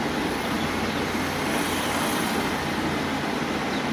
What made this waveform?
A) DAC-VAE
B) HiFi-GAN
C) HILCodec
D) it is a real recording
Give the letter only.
D